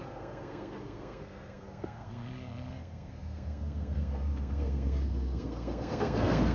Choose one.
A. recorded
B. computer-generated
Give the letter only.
B